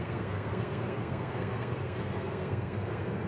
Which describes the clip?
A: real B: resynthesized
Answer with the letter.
B